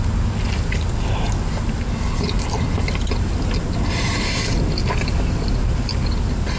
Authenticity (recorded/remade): recorded